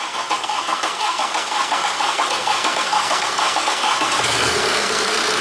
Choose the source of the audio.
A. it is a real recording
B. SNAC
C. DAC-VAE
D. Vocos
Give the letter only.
B